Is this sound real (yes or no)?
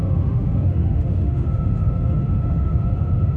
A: no